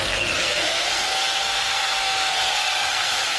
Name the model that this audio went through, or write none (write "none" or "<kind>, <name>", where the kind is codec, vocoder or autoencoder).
codec, SNAC